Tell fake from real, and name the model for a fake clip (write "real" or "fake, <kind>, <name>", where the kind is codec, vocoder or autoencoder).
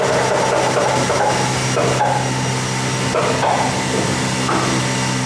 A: real